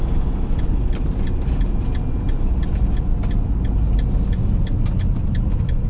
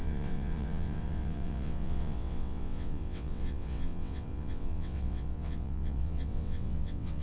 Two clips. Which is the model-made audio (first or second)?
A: second